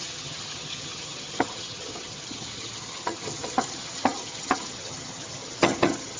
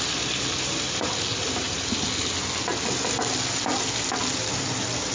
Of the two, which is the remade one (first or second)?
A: first